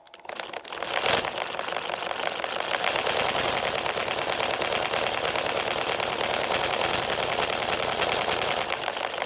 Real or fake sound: fake